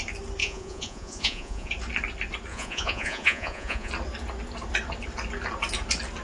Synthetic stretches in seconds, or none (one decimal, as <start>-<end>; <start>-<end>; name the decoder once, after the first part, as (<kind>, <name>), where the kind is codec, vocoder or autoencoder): 0.4-1.7 (vocoder, Vocos); 2.5-3.9